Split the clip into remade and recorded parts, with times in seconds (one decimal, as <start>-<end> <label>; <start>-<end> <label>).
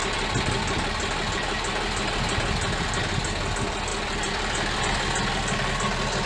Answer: 0.0-3.9 recorded; 3.9-4.8 remade; 4.8-6.3 recorded